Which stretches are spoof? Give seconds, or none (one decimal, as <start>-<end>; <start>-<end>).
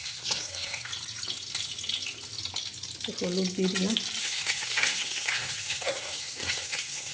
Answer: 0.0-0.9; 4.2-7.1